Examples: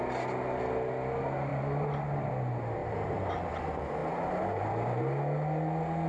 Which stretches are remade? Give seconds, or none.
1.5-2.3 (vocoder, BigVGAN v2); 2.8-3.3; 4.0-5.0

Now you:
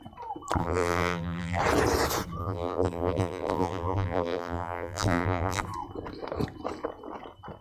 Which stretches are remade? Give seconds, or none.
0.6-1.6 (vocoder, BigVGAN v2); 2.4-5.6